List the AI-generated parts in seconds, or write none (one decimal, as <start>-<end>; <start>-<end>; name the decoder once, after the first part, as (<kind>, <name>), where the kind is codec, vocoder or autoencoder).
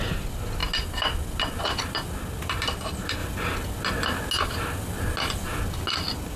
0.0-0.6 (vocoder, BigVGAN v2); 1.6-3.2; 5.9-6.4